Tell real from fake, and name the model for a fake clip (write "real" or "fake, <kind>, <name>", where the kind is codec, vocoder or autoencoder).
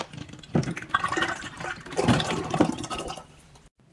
real